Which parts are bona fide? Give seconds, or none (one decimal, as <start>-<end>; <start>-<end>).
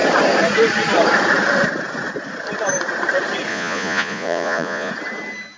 0.0-3.5; 4.9-5.6